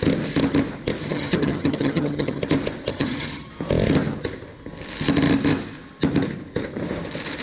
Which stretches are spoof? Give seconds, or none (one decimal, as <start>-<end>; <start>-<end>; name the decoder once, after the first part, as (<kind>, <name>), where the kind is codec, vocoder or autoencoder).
1.0-2.4 (vocoder, HiFi-GAN); 2.9-3.5